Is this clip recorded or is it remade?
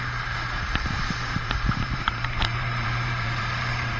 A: remade